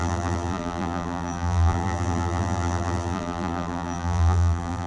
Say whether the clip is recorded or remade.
remade